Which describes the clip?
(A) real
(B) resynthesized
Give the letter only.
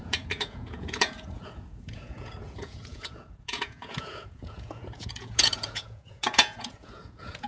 B